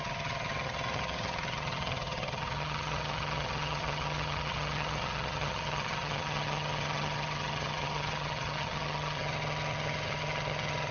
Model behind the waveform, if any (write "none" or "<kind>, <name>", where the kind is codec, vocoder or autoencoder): vocoder, HiFi-GAN